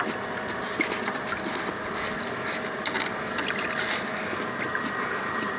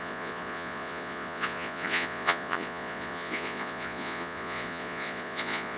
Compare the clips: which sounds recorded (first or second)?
first